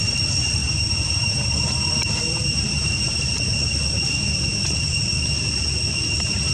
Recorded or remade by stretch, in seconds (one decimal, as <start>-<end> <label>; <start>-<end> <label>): 0.0-0.6 recorded; 0.6-3.3 remade; 3.3-6.5 recorded